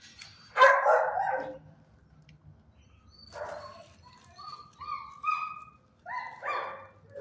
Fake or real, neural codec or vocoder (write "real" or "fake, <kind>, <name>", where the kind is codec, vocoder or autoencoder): real